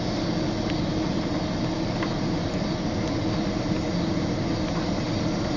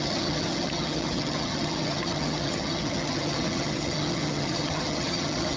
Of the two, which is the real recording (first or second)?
first